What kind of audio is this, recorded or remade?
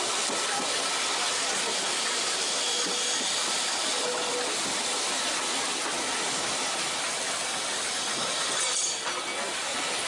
recorded